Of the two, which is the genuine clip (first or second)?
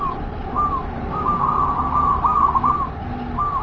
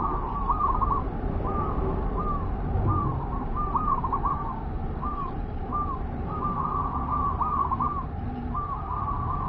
first